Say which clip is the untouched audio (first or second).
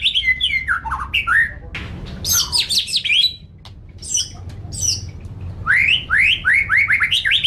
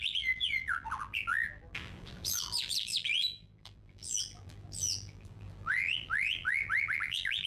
first